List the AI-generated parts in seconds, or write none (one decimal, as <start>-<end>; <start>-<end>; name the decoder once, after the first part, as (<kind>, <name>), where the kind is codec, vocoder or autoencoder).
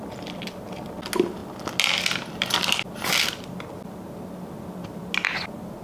none